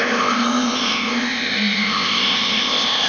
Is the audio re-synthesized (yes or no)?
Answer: yes